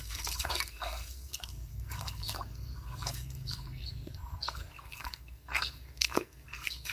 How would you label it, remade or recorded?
remade